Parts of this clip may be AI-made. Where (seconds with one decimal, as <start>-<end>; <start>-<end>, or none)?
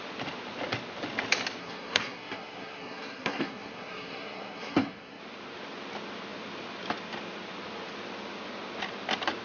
1.6-5.2